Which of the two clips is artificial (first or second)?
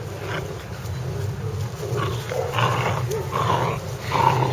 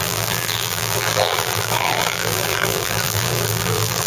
second